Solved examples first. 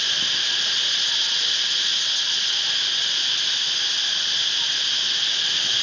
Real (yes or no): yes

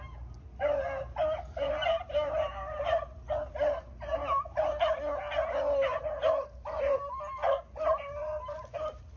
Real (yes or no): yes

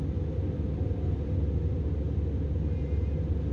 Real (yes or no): yes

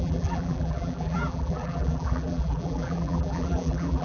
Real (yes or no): no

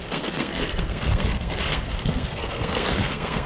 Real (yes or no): no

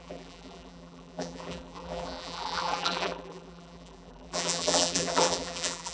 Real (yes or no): no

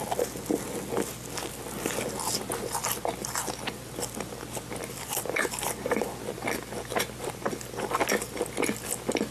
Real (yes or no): yes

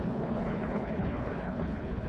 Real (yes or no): no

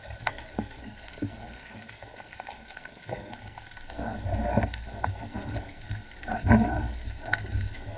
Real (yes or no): no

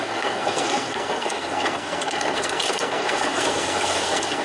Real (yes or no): no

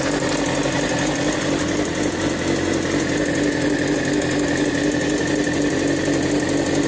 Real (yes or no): yes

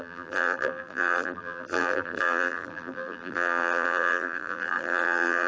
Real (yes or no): no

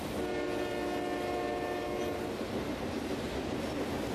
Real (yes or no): yes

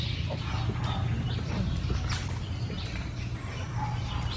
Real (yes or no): yes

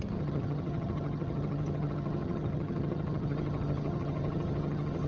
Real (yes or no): no